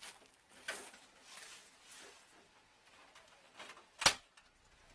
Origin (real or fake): real